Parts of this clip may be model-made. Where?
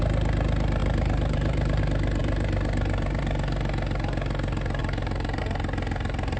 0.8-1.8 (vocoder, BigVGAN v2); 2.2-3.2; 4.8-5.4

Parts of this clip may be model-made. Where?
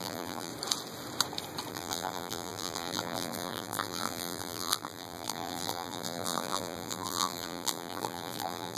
0.0-0.5 (vocoder, BigVGAN v2); 1.7-8.8